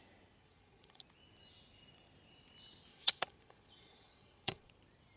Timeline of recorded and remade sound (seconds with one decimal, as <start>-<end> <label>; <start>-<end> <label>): 0.0-0.4 recorded; 0.4-1.0 remade; 1.0-2.9 recorded; 2.9-4.7 remade; 4.7-5.2 recorded